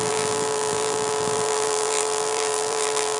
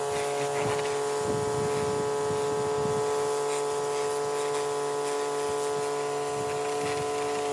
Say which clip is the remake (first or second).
first